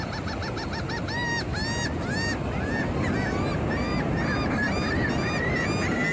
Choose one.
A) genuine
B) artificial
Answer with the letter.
A